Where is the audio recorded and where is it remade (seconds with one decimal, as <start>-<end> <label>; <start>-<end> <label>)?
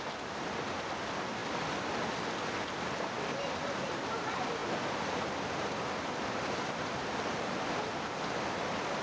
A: 0.0-9.0 recorded